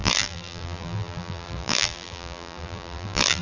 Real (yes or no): no